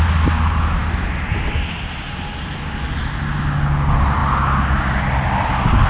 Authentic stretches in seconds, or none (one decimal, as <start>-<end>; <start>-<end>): 0.0-5.9